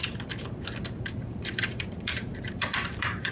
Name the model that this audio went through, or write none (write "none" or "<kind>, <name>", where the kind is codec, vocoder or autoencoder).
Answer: vocoder, BigVGAN v2